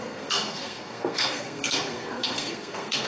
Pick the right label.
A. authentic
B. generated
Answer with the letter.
B